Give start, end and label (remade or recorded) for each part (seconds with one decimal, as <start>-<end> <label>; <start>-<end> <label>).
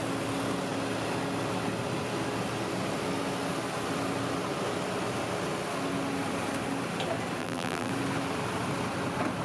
0.0-7.4 recorded; 7.4-7.9 remade; 7.9-9.4 recorded